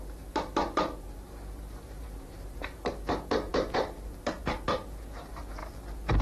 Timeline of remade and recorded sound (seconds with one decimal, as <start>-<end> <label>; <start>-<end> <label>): 0.0-5.6 remade; 5.6-6.2 recorded